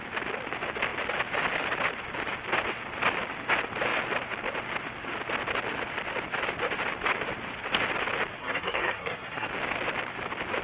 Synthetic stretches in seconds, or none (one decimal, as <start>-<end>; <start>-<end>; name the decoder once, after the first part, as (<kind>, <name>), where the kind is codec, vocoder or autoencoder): 8.4-9.5 (codec, SNAC)